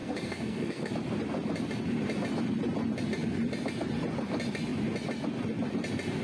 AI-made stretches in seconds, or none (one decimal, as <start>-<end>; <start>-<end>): 0.0-0.9